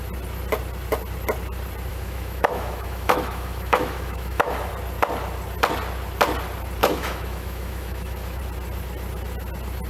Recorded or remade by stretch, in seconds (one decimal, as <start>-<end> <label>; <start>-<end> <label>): 0.0-1.9 recorded; 1.9-4.7 remade; 4.7-6.8 recorded; 6.8-8.4 remade; 8.4-9.9 recorded